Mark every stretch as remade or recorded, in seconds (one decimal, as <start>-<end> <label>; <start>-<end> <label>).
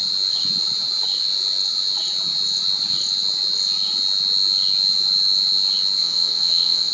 0.0-6.0 recorded; 6.0-6.9 remade